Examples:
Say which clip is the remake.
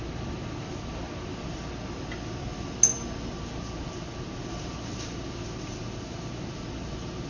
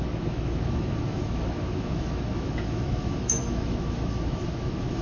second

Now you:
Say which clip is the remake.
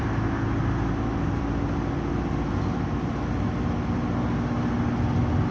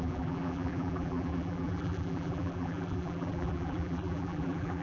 second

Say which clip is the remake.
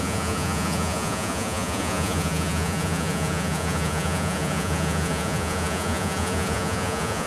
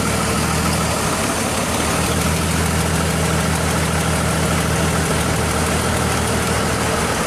first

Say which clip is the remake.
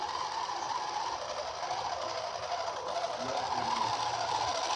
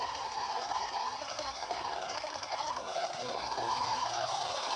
second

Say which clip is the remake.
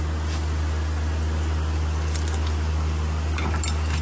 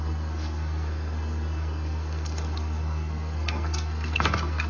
second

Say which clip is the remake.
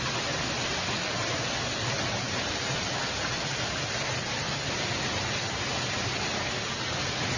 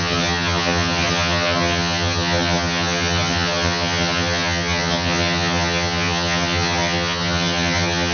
second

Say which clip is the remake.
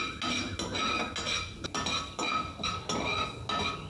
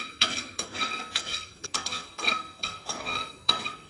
second